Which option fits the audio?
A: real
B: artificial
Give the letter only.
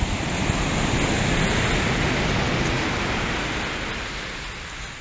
A